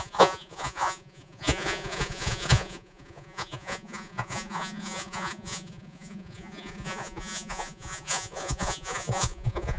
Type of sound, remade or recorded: remade